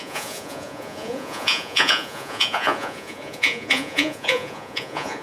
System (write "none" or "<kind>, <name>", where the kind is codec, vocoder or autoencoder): vocoder, Vocos